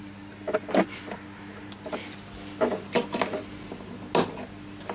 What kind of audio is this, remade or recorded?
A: recorded